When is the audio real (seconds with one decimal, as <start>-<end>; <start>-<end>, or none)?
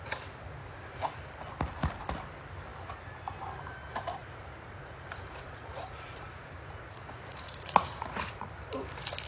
0.0-0.6; 1.2-4.2; 8.5-9.3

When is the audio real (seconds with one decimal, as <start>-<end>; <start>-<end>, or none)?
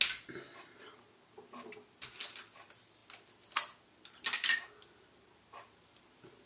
0.0-6.5